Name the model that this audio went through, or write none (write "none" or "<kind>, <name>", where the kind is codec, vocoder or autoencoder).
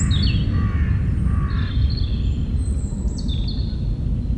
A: none